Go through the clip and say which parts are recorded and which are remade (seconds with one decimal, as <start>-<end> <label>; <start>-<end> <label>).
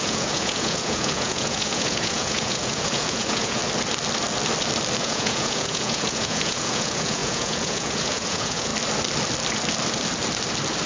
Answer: 0.0-3.6 remade; 3.6-5.0 recorded; 5.0-8.7 remade; 8.7-10.9 recorded